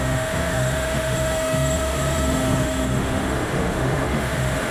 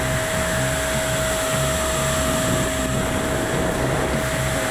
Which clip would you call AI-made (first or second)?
first